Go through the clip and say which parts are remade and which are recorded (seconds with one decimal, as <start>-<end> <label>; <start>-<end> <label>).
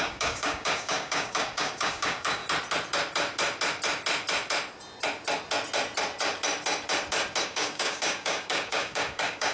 0.0-2.4 remade; 2.4-7.4 recorded; 7.4-9.5 remade